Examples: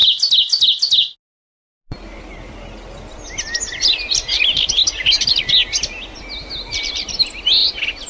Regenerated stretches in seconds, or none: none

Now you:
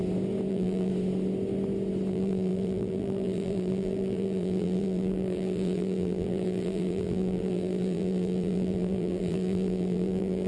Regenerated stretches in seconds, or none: 0.5-0.9; 2.1-10.5

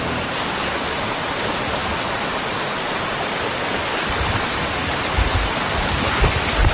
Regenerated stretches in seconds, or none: none

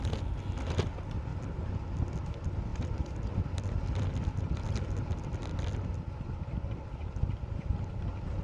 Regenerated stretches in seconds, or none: 5.5-7.9

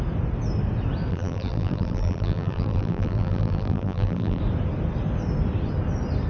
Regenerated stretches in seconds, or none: 1.1-4.4